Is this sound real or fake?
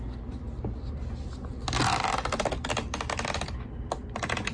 real